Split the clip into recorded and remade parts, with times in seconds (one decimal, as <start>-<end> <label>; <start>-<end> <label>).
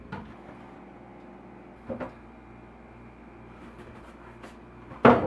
0.0-1.1 remade; 1.1-3.4 recorded; 3.4-5.3 remade